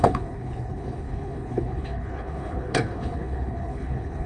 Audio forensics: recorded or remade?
remade